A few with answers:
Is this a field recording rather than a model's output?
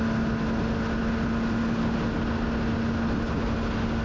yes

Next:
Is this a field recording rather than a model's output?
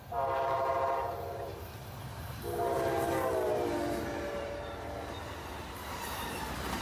no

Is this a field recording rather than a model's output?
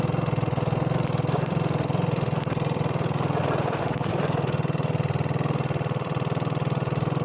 no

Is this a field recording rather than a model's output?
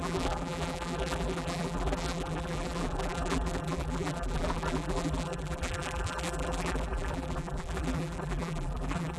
no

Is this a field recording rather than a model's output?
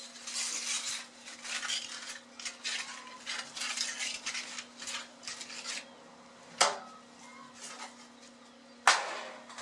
yes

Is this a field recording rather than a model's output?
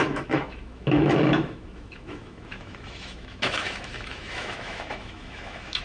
no